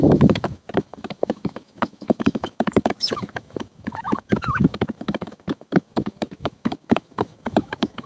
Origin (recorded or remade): remade